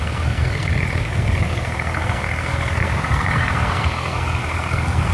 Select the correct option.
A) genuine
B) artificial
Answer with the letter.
B